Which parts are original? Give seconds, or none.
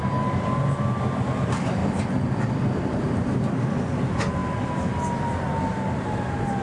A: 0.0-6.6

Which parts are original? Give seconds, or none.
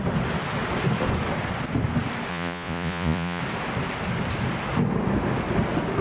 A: 0.0-2.3; 3.4-6.0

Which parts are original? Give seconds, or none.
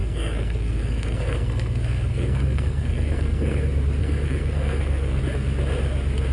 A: 3.6-4.0; 5.2-6.3